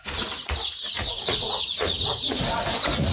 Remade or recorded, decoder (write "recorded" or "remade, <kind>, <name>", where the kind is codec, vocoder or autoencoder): remade, vocoder, Vocos